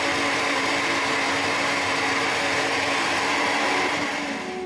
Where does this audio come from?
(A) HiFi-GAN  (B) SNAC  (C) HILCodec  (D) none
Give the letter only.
D